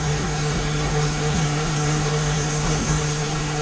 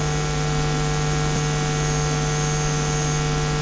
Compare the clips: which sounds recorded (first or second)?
second